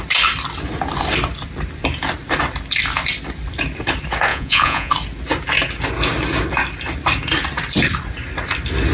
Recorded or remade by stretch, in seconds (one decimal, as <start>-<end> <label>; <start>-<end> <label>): 0.0-4.3 recorded; 4.3-4.9 remade; 4.9-8.9 recorded